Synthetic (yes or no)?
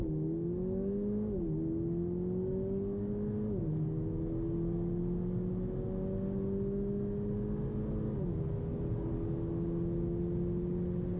no